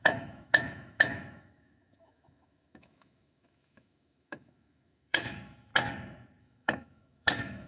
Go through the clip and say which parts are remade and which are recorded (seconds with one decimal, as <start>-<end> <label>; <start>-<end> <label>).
0.0-5.7 remade; 5.7-6.4 recorded; 6.4-7.7 remade